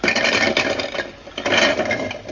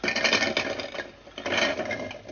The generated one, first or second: first